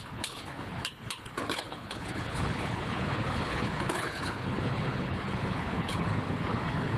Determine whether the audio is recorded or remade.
remade